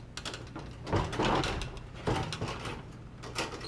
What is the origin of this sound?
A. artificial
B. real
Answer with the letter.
B